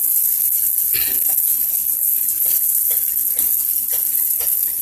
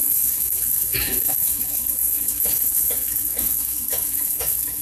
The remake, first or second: second